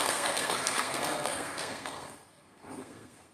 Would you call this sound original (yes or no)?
no